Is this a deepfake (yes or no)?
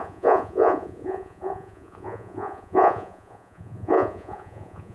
yes